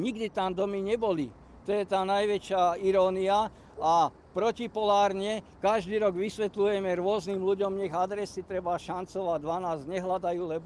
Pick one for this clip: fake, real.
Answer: real